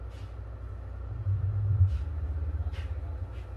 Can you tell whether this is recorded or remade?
recorded